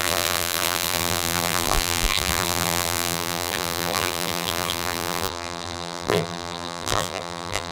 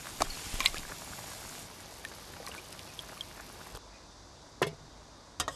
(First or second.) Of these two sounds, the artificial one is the first